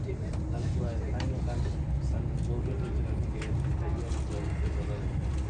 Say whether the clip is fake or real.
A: real